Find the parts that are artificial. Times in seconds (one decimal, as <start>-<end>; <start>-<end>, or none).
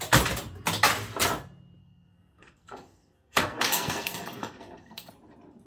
1.8-5.1